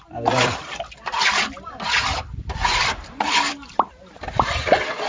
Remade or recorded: remade